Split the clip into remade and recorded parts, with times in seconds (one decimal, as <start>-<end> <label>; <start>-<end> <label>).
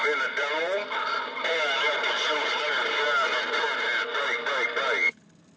0.0-5.6 recorded